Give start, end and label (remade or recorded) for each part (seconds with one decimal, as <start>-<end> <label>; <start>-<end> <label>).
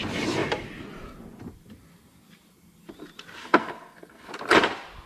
0.0-3.4 recorded; 3.4-4.3 remade; 4.3-5.1 recorded